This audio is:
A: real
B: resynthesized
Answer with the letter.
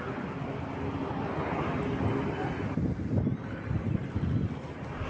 A